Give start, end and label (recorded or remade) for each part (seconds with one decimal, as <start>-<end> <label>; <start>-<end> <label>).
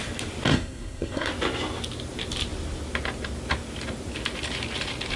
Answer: 0.0-0.5 recorded; 0.5-1.3 remade; 1.3-5.2 recorded